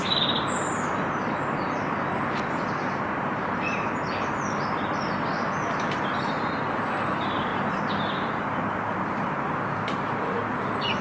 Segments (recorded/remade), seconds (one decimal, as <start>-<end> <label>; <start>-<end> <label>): 0.0-11.0 recorded